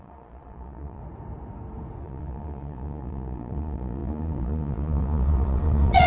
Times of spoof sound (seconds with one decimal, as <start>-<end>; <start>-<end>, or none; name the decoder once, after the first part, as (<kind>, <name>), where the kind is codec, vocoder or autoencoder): 0.0-1.0 (vocoder, Vocos); 2.0-6.1